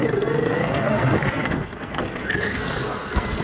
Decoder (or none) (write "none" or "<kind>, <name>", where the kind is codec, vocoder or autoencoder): codec, SNAC